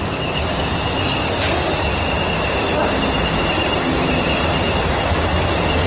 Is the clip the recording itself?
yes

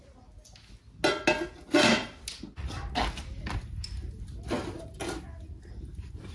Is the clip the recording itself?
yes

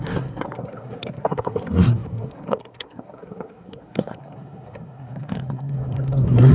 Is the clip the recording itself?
no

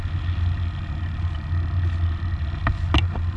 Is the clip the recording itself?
yes